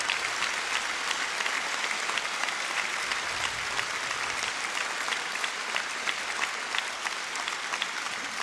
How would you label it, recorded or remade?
remade